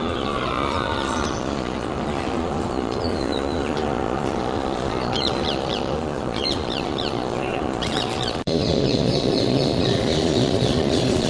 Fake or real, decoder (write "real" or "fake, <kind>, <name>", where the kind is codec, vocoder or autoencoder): fake, vocoder, Vocos